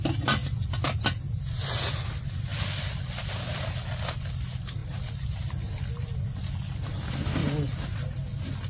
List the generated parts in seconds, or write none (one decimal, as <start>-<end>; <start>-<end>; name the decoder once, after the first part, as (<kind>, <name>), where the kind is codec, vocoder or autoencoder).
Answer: 2.5-3.2 (vocoder, BigVGAN v2); 7.4-8.7